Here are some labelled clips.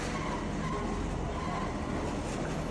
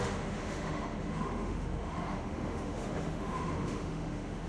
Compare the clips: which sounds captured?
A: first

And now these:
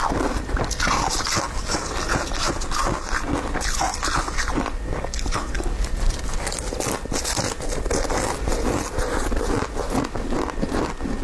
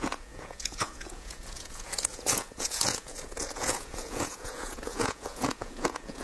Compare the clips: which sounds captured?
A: first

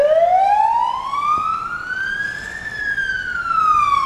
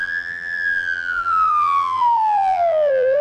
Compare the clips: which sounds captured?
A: first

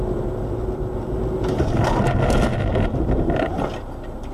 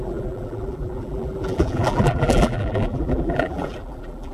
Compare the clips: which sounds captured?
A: first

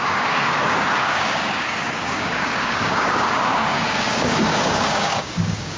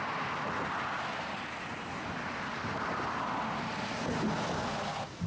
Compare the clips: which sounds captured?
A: second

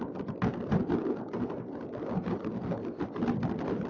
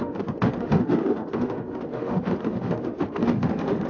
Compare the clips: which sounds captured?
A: first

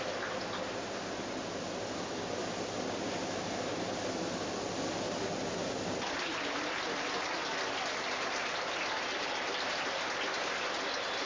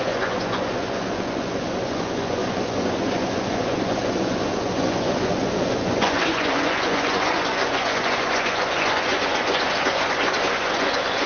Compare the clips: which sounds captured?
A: first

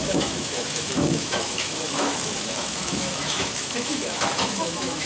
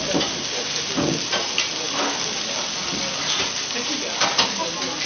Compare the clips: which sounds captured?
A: second